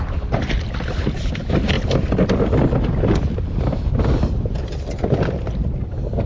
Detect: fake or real real